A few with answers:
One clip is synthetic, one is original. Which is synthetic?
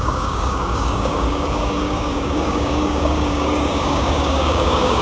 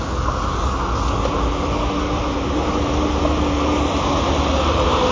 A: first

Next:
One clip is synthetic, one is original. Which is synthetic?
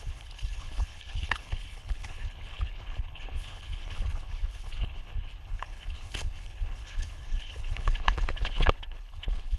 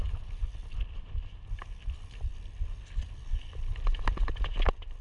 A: first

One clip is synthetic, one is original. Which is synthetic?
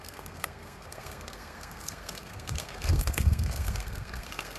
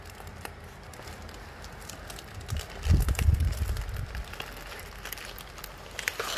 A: first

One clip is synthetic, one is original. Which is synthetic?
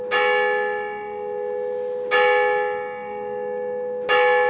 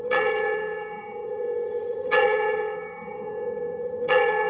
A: second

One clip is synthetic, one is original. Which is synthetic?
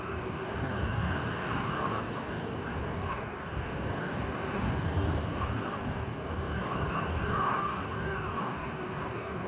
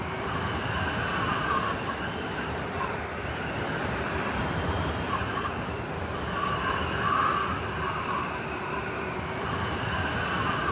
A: first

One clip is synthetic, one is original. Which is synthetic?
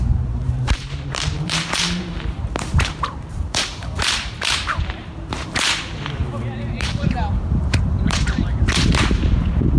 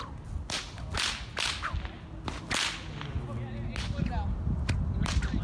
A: first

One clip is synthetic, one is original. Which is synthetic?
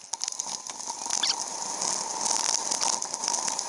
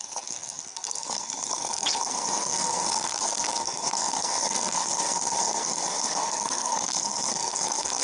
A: second